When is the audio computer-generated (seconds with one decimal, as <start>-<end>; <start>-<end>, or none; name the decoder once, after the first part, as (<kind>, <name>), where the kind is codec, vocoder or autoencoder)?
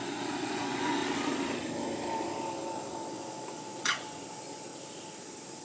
0.0-1.0 (vocoder, Vocos); 3.1-4.7